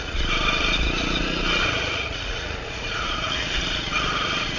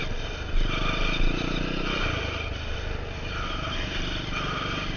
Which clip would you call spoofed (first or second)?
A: first